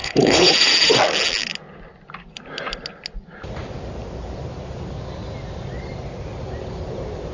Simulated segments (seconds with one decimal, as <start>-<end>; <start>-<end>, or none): 0.0-0.5